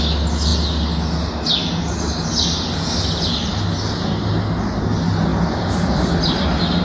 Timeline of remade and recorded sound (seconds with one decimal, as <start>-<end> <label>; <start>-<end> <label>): 0.0-5.3 recorded; 5.3-6.1 remade; 6.1-6.8 recorded